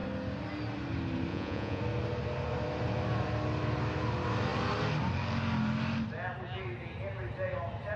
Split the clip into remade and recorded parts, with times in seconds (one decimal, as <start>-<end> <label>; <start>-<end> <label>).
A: 0.0-1.3 recorded; 1.3-1.8 remade; 1.8-8.0 recorded